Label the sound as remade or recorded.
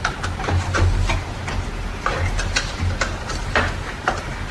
recorded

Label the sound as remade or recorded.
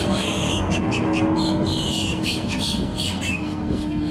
remade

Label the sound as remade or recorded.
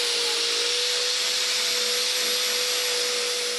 recorded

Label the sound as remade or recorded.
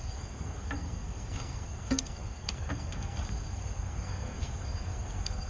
remade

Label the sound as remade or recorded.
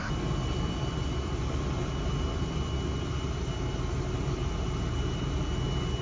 recorded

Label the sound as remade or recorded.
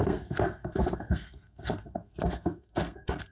remade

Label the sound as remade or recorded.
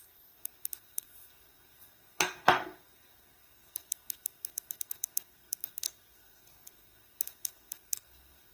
remade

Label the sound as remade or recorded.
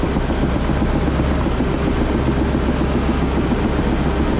recorded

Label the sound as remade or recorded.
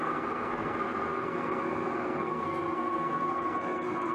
remade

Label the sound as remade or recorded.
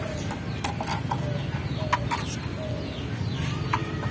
recorded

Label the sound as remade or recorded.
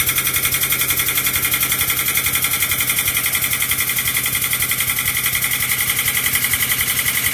recorded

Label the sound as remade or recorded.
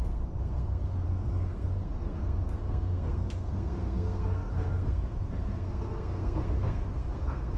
remade